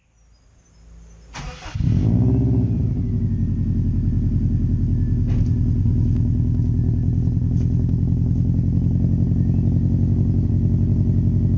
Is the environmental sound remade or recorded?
recorded